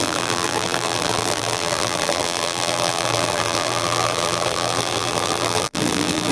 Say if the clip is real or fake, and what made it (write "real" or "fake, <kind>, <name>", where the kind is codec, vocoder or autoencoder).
fake, vocoder, BigVGAN v2